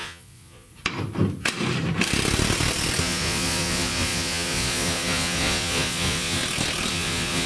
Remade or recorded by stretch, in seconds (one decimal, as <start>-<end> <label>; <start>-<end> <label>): 0.0-0.7 remade; 0.7-3.0 recorded; 3.0-6.4 remade; 6.4-6.9 recorded; 6.9-7.5 remade